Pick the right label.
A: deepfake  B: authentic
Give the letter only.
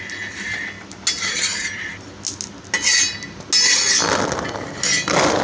B